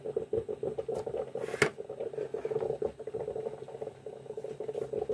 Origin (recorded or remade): recorded